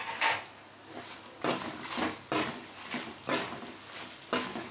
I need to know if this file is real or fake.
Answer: real